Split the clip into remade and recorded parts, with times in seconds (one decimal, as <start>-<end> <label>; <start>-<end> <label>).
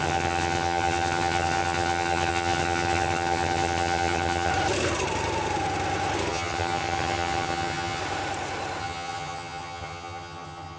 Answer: 0.0-4.5 remade; 4.5-6.3 recorded; 6.3-8.0 remade; 8.0-8.8 recorded; 8.8-10.8 remade